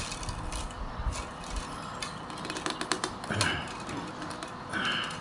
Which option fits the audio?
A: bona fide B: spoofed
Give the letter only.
A